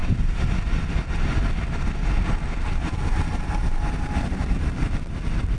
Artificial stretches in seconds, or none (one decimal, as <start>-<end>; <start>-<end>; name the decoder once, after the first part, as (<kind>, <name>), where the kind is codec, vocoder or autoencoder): 0.0-1.6 (vocoder, BigVGAN v2)

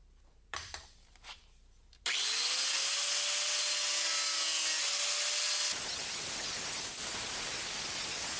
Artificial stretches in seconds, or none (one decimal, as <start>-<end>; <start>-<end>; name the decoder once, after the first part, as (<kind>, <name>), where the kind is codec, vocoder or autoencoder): 0.0-2.1 (vocoder, BigVGAN v2)

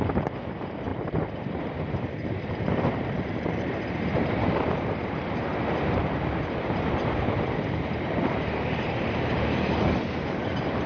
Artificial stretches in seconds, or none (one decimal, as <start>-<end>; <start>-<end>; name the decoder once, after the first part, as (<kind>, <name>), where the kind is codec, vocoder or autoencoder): 0.0-5.5 (vocoder, BigVGAN v2); 6.0-10.9

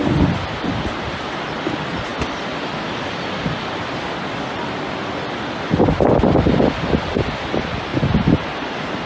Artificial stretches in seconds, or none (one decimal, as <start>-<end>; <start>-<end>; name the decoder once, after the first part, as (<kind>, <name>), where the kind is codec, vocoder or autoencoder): 0.0-7.9 (vocoder, BigVGAN v2); 8.5-9.1

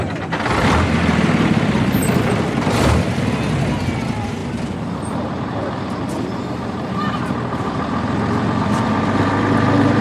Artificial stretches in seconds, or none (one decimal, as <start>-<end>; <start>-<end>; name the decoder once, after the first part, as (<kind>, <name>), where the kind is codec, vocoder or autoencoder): 4.4-8.8 (vocoder, BigVGAN v2)